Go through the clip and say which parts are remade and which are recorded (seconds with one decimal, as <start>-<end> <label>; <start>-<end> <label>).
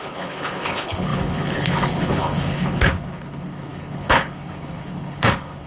0.0-5.7 remade